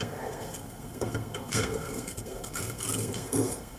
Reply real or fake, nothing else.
fake